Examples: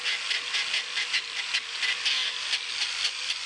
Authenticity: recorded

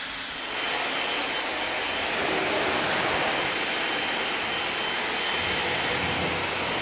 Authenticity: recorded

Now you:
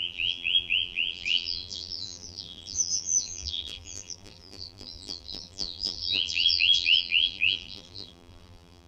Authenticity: remade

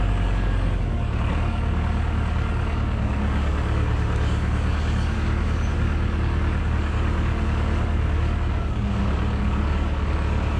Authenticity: remade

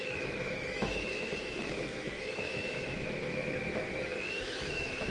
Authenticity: remade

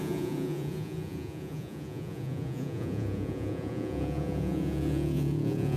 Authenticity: remade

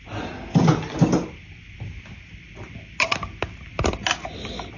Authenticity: recorded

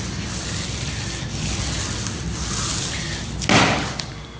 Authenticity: recorded